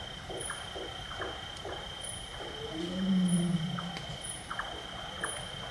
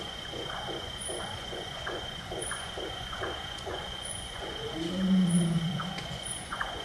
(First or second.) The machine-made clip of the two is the second